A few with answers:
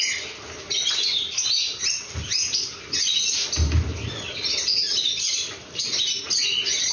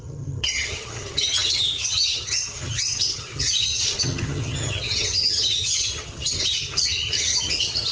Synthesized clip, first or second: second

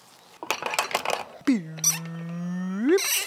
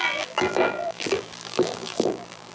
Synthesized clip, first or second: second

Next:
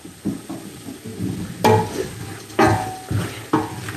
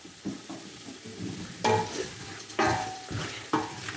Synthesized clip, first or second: second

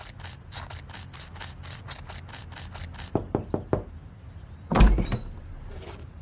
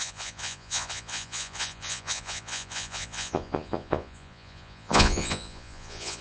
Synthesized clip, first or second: second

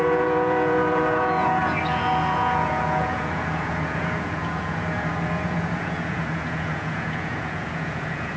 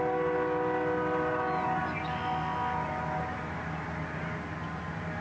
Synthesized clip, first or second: first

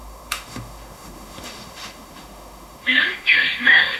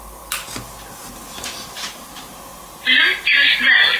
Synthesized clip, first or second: first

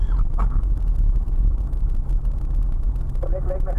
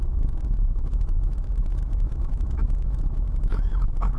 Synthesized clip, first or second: second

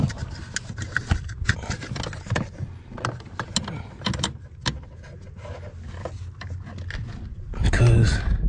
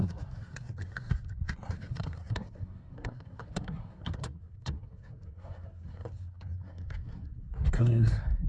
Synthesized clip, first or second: second